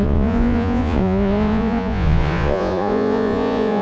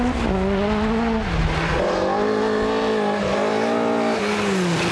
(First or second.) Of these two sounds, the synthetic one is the first